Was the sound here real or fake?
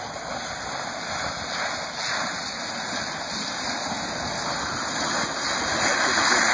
real